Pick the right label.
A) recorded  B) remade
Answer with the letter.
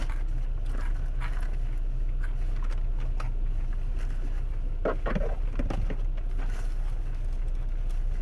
A